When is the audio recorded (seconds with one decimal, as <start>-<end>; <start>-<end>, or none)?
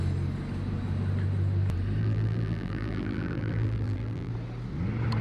0.0-2.0; 4.3-5.2